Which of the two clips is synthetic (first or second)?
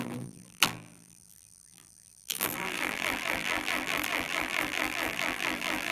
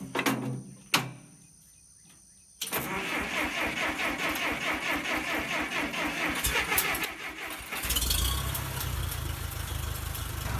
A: first